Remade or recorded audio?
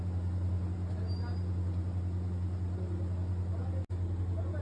recorded